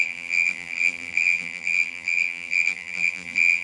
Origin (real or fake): fake